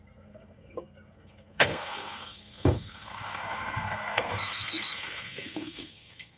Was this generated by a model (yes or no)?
yes